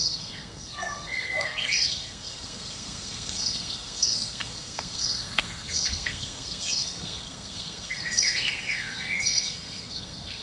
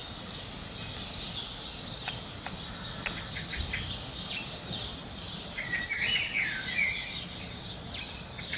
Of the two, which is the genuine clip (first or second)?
second